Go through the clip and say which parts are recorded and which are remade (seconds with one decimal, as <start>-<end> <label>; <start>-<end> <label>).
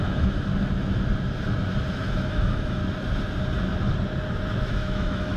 0.0-0.5 remade; 0.5-1.9 recorded; 1.9-2.8 remade; 2.8-4.7 recorded; 4.7-5.4 remade